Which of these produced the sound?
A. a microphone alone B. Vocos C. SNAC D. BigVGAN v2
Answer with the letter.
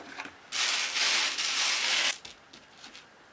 A